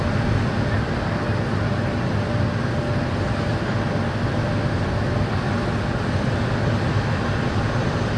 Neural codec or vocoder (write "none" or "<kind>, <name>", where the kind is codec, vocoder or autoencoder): none